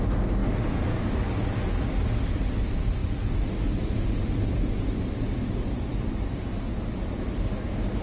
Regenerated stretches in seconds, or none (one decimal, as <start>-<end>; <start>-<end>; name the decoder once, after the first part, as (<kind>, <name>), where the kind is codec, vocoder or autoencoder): none